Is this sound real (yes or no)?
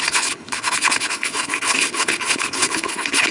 no